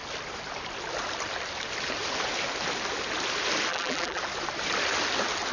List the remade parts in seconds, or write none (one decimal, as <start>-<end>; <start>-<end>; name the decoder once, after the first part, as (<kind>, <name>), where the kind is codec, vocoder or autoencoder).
3.7-4.2 (vocoder, BigVGAN v2)